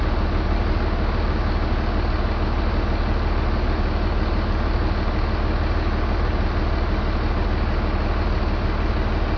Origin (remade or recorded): recorded